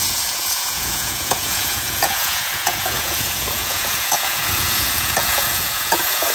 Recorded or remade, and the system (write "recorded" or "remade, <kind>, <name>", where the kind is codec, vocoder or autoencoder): remade, vocoder, Vocos